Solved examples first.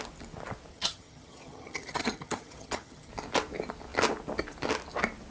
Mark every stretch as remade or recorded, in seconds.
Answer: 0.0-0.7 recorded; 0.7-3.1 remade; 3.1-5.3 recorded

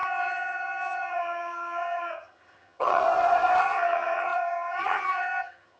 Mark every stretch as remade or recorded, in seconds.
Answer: 0.0-3.0 remade; 3.0-3.6 recorded; 3.6-5.8 remade

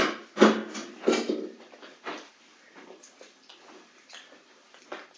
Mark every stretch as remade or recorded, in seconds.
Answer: 0.0-5.2 recorded